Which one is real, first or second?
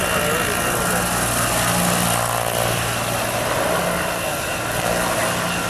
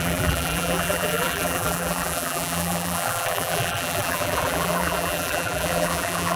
first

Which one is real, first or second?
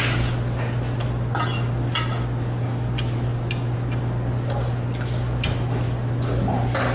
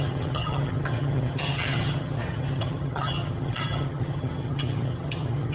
first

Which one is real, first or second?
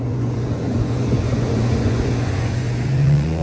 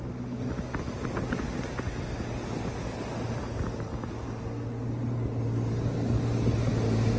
second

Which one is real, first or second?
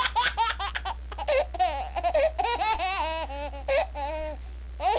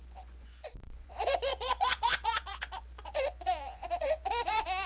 first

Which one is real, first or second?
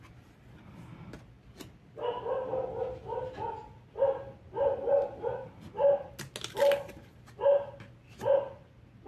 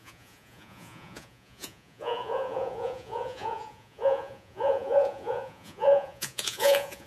first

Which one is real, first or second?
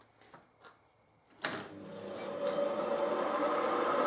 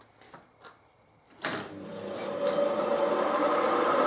first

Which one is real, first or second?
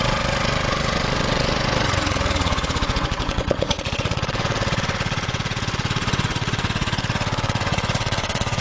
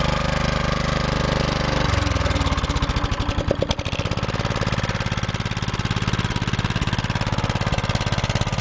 second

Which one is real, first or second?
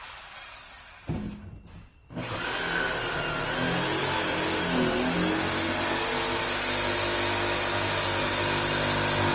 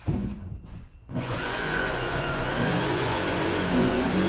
first